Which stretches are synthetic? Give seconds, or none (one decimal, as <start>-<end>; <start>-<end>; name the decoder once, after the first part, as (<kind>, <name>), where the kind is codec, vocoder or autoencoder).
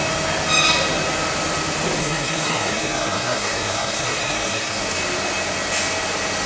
2.0-4.8 (codec, SNAC)